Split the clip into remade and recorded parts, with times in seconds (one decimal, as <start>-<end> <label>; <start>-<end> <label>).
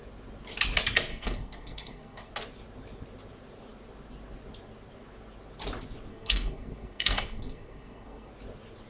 0.0-1.1 recorded; 1.1-2.3 remade; 2.3-6.1 recorded; 6.1-8.3 remade; 8.3-8.9 recorded